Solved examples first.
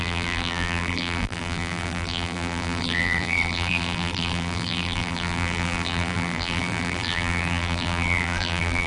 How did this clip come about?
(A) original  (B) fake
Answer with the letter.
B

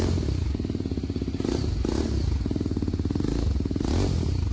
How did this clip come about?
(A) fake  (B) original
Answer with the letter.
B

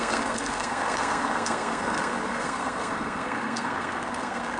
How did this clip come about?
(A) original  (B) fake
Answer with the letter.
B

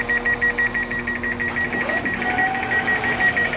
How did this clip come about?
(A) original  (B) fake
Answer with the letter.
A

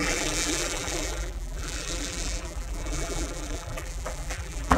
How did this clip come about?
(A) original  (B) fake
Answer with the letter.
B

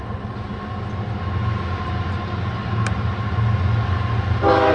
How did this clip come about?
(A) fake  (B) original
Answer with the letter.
B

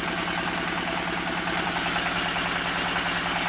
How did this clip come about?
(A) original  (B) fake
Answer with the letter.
A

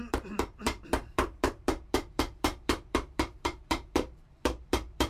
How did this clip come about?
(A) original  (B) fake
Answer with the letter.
B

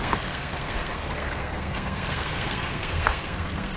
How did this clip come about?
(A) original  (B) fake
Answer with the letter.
B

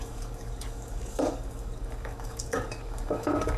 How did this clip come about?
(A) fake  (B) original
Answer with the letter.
A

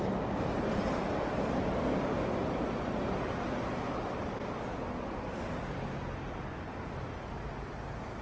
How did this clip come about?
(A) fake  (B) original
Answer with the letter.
B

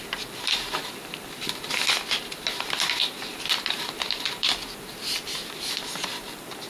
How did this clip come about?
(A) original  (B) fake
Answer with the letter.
B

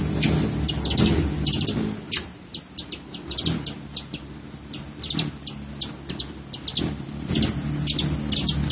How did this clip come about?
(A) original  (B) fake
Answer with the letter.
A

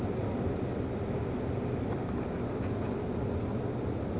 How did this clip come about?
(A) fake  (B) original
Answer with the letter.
B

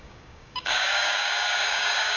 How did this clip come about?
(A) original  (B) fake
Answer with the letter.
B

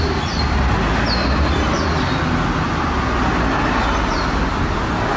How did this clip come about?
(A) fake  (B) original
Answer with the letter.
B